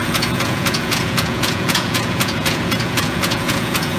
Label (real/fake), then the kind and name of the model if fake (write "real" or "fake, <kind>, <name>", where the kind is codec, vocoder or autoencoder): fake, vocoder, Vocos